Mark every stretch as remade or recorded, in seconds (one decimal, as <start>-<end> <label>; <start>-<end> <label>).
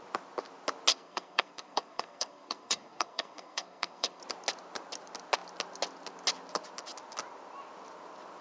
0.0-0.9 recorded; 0.9-4.2 remade; 4.2-8.4 recorded